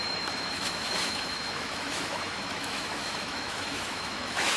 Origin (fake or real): fake